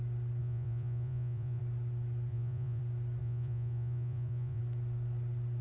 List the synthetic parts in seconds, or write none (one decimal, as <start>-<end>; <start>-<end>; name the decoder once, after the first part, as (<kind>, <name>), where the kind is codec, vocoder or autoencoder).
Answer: 0.4-1.6 (vocoder, Vocos); 2.3-2.8; 3.2-4.6